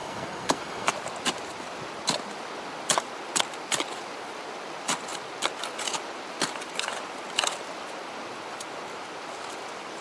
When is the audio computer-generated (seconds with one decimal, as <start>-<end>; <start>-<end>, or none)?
0.0-0.9